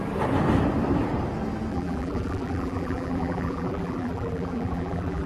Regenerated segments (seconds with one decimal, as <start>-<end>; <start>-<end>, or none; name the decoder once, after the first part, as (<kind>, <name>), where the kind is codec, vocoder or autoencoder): 1.7-5.3 (vocoder, BigVGAN v2)